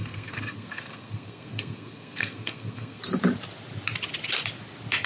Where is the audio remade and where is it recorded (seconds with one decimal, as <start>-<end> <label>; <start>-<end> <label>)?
0.0-3.0 remade; 3.0-5.1 recorded